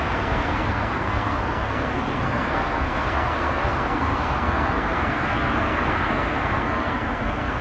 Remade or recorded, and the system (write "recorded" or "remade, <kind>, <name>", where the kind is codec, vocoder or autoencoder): remade, codec, SNAC